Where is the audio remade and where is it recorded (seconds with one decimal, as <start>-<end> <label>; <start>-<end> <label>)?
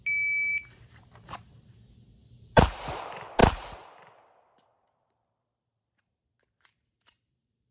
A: 0.0-0.5 recorded; 0.5-1.7 remade; 1.7-2.2 recorded; 2.2-2.9 remade; 2.9-3.4 recorded; 3.4-7.7 remade